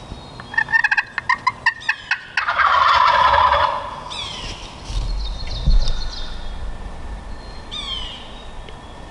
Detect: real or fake real